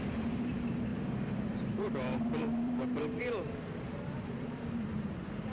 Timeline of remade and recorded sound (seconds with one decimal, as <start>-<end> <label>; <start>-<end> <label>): 0.0-5.5 remade